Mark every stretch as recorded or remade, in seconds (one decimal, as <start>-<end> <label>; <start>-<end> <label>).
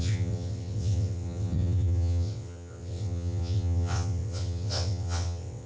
0.0-5.7 remade